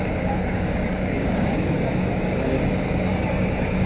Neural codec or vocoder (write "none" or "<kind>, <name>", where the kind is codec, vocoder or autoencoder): codec, DAC